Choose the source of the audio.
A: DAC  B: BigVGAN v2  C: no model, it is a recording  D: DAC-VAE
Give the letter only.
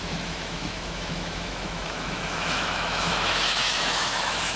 D